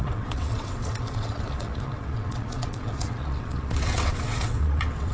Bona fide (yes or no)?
no